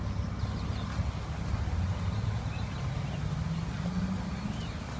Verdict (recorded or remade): recorded